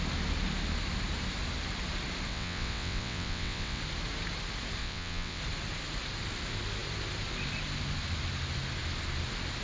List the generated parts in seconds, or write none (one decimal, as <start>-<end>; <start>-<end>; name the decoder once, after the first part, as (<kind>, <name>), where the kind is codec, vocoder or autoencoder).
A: 2.3-3.8 (vocoder, WaveNeXt); 4.8-5.4